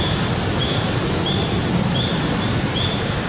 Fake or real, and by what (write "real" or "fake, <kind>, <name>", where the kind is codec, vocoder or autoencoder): fake, vocoder, BigVGAN v2